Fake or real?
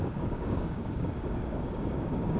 fake